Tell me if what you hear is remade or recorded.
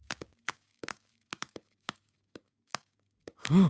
remade